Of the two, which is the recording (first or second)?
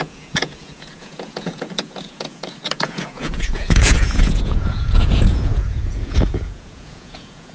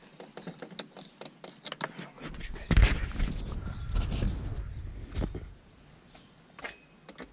second